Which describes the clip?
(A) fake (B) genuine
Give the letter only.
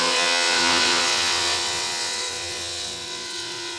A